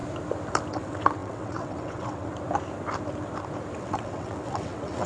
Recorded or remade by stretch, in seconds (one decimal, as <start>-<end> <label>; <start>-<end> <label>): 0.0-0.7 recorded; 0.7-2.3 remade; 2.3-3.8 recorded; 3.8-5.1 remade